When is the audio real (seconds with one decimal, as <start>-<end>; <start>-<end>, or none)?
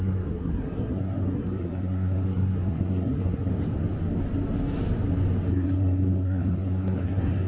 3.5-5.5